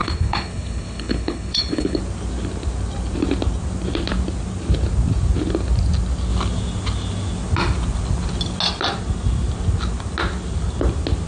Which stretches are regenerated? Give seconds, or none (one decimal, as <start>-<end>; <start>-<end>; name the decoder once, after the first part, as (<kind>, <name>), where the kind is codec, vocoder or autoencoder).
0.0-2.0 (codec, HILCodec)